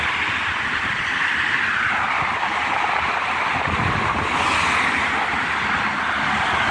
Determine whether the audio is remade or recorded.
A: recorded